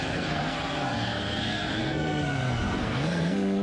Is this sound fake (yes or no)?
yes